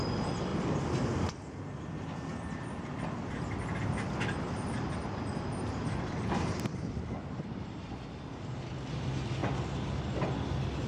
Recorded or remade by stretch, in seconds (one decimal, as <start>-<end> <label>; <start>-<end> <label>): 0.0-0.5 recorded; 0.5-3.2 remade; 3.2-10.9 recorded